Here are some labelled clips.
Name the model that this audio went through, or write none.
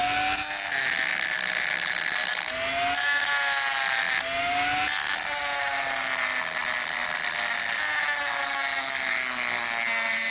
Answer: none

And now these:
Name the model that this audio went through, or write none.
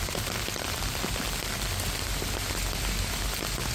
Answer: none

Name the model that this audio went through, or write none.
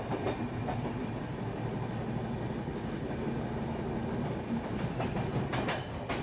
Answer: none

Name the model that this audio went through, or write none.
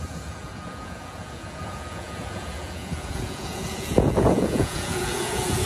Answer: vocoder, Vocos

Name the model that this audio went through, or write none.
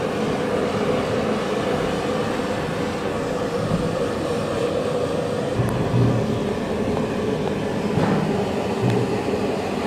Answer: none